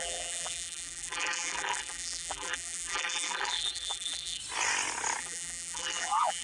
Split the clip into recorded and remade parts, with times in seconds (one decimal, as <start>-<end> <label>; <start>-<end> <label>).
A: 0.0-4.4 remade; 4.4-5.2 recorded; 5.2-6.4 remade